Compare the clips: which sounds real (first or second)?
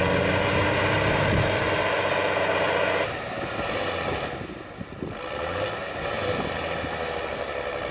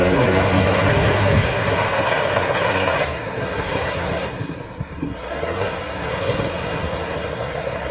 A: first